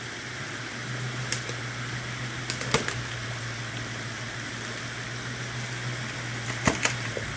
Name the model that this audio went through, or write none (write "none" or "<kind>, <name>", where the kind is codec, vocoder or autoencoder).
none